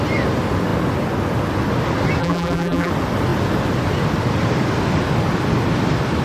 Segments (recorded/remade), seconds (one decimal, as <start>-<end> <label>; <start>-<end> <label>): 0.0-2.2 recorded; 2.2-2.9 remade; 2.9-6.2 recorded